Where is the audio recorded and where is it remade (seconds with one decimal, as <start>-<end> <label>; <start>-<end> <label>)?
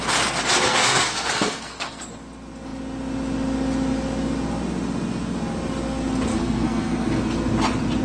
0.0-0.6 recorded; 0.6-2.0 remade; 2.0-6.3 recorded; 6.3-7.2 remade; 7.2-8.0 recorded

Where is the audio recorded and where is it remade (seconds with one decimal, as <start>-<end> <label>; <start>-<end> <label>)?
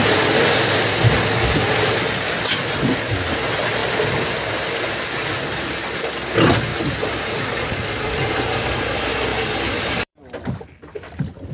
0.0-6.7 recorded; 6.7-7.4 remade; 7.4-9.3 recorded; 9.3-10.5 remade; 10.5-11.5 recorded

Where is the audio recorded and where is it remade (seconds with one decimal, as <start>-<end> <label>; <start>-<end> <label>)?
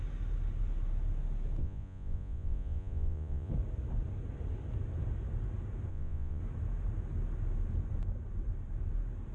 0.0-1.6 recorded; 1.6-3.5 remade; 3.5-5.9 recorded; 5.9-6.4 remade; 6.4-9.3 recorded